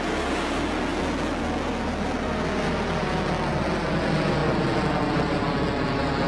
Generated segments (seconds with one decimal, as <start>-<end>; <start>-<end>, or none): none

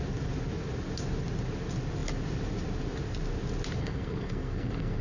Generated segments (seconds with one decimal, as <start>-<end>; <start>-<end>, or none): 3.8-5.0

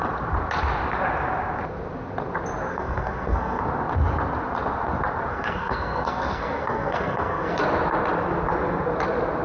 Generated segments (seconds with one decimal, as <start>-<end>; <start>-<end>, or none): 2.7-3.6; 5.3-7.6